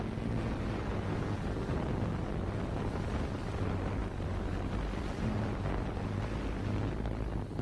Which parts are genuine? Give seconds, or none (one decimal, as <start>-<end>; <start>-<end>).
0.0-7.6